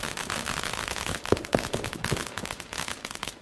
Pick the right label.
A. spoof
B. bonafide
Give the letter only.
A